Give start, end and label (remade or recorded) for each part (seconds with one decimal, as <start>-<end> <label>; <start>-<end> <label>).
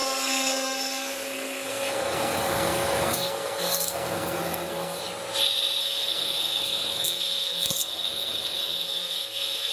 0.0-5.0 remade; 5.0-5.8 recorded; 5.8-9.7 remade